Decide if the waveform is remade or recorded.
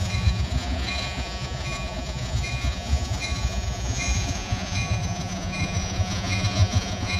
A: remade